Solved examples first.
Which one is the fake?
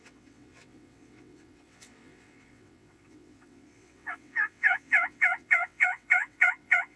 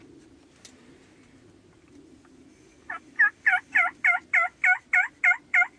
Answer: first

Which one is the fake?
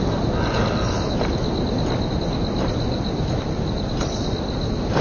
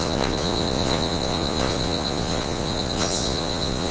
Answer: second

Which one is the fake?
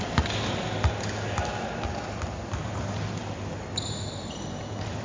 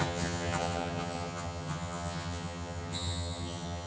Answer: second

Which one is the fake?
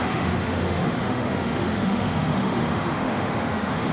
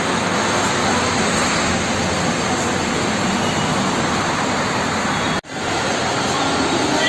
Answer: first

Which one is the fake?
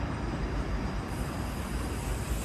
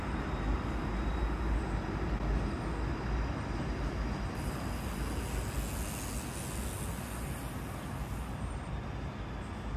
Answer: first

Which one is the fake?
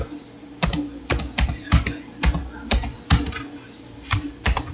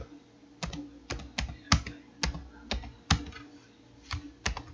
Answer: first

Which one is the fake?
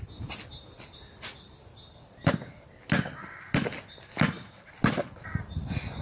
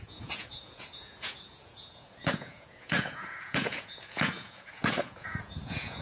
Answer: second